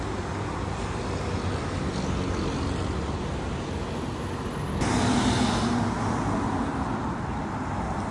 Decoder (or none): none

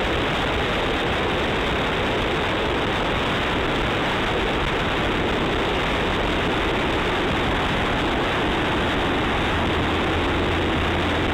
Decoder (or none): none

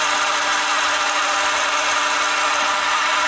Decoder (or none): none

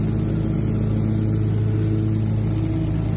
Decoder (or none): none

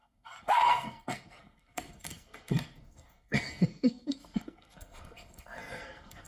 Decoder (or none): codec, SNAC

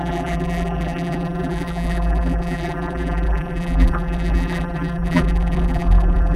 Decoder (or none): vocoder, BigVGAN v2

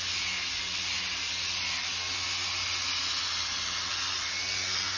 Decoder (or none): none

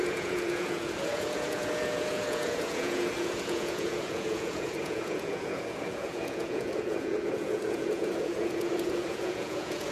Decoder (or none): vocoder, Vocos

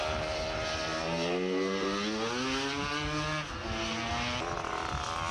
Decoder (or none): none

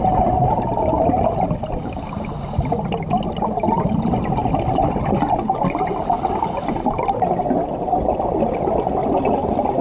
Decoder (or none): none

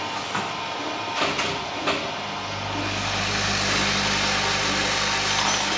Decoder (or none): none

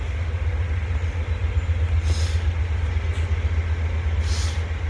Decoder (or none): none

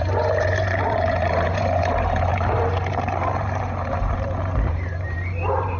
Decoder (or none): vocoder, BigVGAN v2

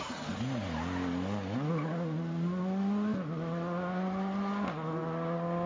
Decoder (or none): none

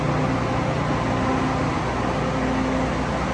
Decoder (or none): none